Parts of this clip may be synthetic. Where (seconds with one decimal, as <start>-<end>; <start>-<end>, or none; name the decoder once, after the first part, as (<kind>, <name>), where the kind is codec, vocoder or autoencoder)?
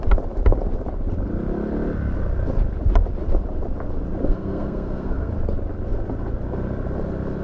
4.2-5.3 (codec, SNAC)